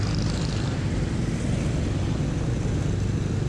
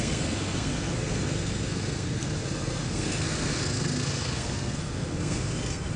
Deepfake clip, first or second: second